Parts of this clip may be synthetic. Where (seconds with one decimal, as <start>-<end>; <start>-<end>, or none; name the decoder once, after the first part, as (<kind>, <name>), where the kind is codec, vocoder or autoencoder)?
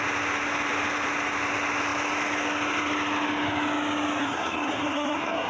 4.2-5.5 (codec, SNAC)